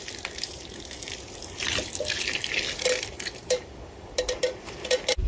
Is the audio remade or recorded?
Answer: remade